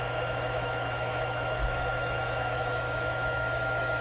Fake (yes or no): yes